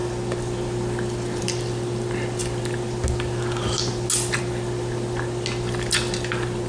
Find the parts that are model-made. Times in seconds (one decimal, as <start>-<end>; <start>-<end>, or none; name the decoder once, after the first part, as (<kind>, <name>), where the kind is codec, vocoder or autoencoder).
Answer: none

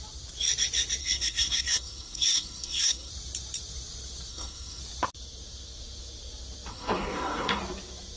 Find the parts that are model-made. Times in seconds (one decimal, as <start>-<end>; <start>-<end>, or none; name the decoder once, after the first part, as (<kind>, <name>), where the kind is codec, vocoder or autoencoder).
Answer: 1.0-3.1 (codec, SNAC); 4.3-4.8; 6.7-7.6

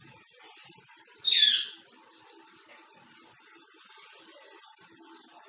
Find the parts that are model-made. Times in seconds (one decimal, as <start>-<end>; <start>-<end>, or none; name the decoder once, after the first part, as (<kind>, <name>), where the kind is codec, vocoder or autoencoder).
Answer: none

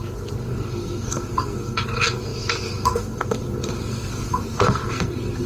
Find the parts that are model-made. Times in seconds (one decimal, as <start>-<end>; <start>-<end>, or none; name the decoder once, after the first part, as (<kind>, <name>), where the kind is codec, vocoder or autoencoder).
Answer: 0.0-5.5 (codec, SNAC)

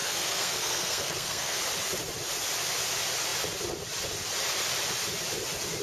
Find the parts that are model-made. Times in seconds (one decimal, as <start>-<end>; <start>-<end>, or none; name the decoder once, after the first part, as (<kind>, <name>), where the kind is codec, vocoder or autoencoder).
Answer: 0.0-1.6 (codec, SNAC)

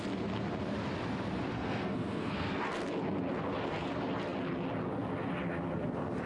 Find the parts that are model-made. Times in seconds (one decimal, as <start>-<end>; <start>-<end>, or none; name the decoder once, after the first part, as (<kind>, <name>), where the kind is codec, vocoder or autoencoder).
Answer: 1.5-2.6 (codec, SNAC)

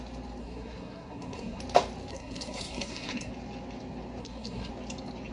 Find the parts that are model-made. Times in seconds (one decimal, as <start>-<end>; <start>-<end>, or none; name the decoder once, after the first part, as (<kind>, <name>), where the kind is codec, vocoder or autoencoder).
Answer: 0.4-1.6 (codec, SNAC); 2.1-3.3; 4.2-4.7